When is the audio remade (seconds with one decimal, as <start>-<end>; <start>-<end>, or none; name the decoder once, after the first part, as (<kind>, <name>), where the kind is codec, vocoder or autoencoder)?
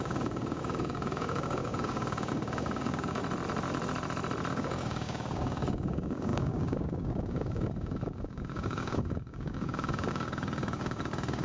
0.0-3.2 (codec, DAC); 4.5-11.4